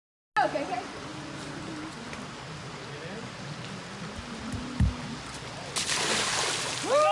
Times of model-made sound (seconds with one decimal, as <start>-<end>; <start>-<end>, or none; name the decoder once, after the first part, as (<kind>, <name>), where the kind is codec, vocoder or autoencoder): none